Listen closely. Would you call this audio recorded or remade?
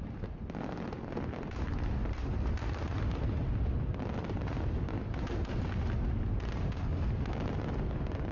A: recorded